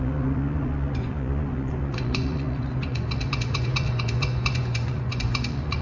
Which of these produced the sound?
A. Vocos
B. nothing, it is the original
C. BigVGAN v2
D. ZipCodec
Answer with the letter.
A